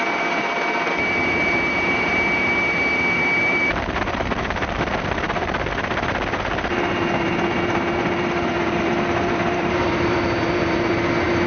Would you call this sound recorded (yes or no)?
no